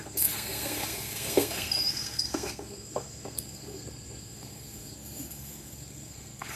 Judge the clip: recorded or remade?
remade